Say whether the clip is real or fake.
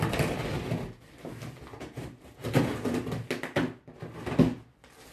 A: real